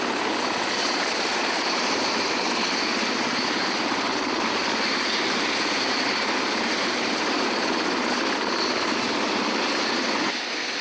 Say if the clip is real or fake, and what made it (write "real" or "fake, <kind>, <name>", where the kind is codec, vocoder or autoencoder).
real